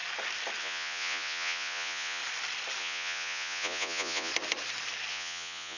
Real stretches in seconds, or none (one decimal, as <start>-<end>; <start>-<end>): 0.0-0.6; 2.2-2.8; 4.3-5.1